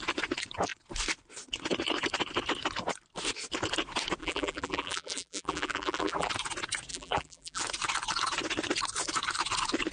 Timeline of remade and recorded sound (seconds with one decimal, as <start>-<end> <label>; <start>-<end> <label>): 0.0-4.2 recorded; 4.2-6.3 remade; 6.3-6.9 recorded; 6.9-7.6 remade; 7.6-9.9 recorded